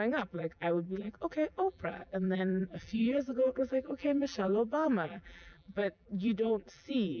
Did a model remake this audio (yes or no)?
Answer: yes